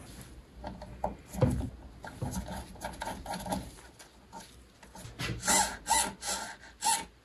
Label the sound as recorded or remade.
recorded